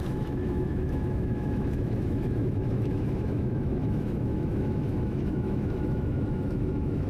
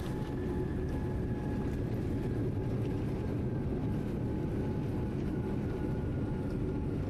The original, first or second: second